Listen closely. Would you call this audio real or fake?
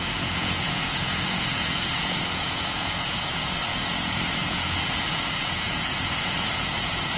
fake